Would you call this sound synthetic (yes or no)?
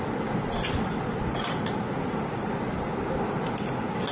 no